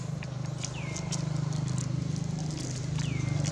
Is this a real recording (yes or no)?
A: yes